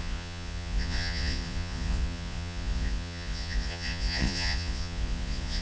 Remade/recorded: remade